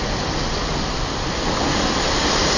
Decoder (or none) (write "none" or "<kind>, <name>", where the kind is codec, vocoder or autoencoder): none